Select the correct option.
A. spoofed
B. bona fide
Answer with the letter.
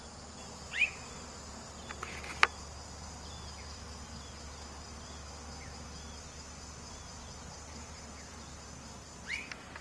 B